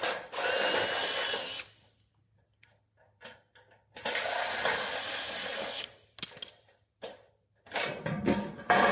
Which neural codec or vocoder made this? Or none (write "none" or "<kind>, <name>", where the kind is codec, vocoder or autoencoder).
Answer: none